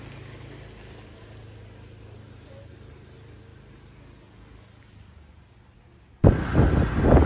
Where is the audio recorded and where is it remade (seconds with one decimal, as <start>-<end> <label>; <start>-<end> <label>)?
0.0-7.3 recorded

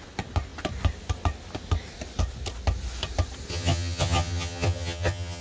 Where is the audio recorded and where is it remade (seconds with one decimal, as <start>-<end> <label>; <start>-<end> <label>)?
0.0-3.5 recorded; 3.5-5.4 remade

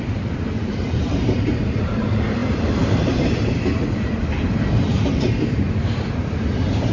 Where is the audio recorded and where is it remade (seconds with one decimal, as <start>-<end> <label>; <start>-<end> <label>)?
0.0-6.9 remade